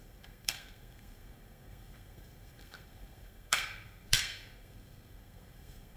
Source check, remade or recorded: remade